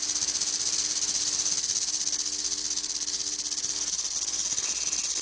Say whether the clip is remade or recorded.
recorded